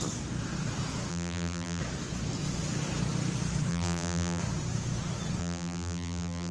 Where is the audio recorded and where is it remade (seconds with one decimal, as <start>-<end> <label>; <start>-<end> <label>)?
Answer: 0.0-1.1 recorded; 1.1-1.8 remade; 1.8-3.7 recorded; 3.7-4.4 remade; 4.4-5.4 recorded; 5.4-6.5 remade